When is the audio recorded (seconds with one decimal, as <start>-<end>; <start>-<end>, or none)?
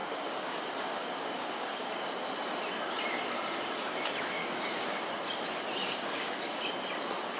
2.1-4.4; 5.1-5.8; 6.3-7.4